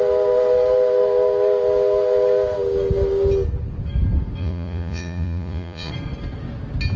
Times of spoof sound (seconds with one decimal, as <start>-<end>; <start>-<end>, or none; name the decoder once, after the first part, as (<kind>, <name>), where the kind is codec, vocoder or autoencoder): 4.4-5.9 (vocoder, Vocos)